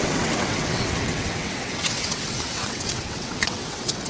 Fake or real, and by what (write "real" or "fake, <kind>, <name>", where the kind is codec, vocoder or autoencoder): fake, vocoder, WaveNeXt